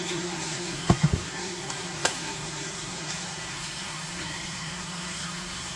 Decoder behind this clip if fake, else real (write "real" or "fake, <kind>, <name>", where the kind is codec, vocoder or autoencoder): fake, codec, SNAC